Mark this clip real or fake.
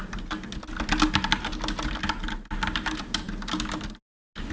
real